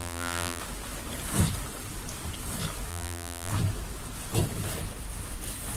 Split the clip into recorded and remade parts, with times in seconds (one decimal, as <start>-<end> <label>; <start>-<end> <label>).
0.0-0.6 remade; 0.6-2.9 recorded; 2.9-3.5 remade; 3.5-5.8 recorded